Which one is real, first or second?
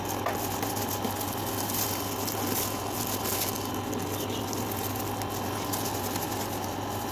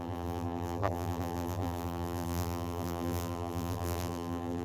first